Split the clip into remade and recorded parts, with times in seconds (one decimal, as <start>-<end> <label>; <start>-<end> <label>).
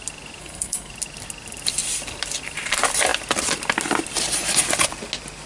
0.0-0.4 recorded; 0.4-0.9 remade; 0.9-5.5 recorded